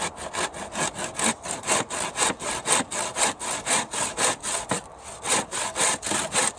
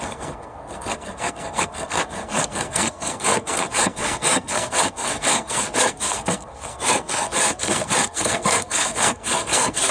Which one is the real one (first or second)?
first